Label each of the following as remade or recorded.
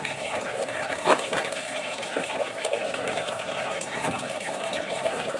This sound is remade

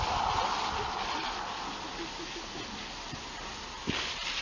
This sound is recorded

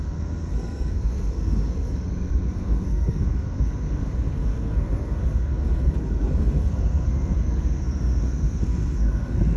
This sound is remade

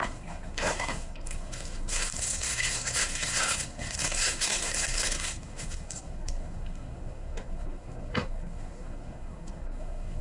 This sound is remade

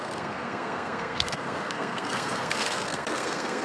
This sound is remade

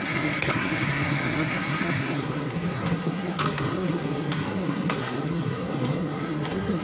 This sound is remade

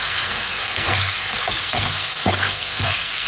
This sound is remade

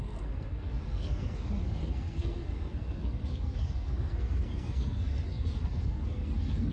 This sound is remade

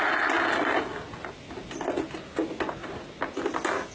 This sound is recorded